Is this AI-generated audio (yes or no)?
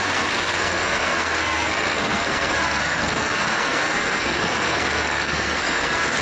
yes